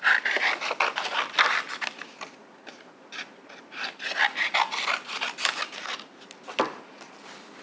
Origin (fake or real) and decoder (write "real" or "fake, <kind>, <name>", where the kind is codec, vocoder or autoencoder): real